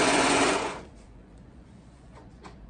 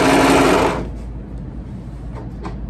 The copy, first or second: first